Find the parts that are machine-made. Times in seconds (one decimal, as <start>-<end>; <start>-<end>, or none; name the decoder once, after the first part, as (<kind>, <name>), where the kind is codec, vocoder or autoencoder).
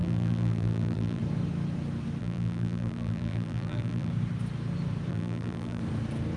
0.0-1.2 (vocoder, BigVGAN v2); 2.2-4.1; 5.1-5.8